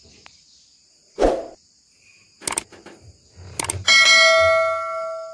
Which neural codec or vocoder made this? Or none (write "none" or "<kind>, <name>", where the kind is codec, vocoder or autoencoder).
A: none